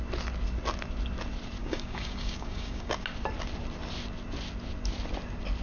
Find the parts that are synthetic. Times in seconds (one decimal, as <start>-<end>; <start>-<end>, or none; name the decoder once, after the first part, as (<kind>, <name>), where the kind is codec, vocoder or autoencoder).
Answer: 1.6-2.9 (codec, DAC)